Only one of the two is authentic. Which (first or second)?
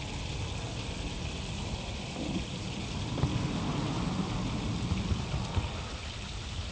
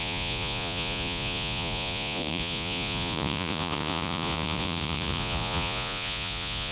first